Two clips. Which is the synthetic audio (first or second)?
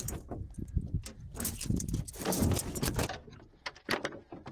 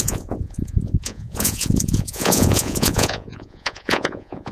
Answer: second